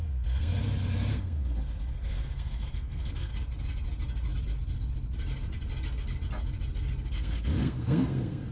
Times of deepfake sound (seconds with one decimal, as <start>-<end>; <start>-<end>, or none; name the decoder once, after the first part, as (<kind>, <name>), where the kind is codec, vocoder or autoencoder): 0.0-0.5 (codec, SNAC); 1.1-3.3; 7.1-8.5